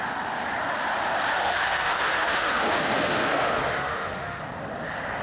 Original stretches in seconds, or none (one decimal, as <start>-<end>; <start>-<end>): 0.0-1.3; 4.4-5.2